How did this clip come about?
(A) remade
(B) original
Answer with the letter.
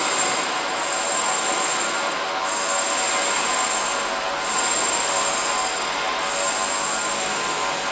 B